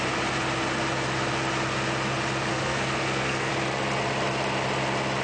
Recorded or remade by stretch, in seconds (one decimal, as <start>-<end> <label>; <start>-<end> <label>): 0.0-2.5 recorded; 2.5-3.5 remade; 3.5-5.2 recorded